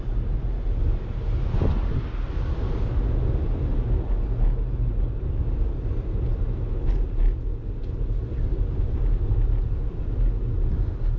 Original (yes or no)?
yes